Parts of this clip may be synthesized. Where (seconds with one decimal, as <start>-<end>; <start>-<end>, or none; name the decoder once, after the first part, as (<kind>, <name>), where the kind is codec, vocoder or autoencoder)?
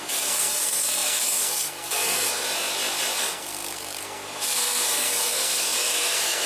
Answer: 0.0-2.4 (codec, SNAC); 3.2-6.5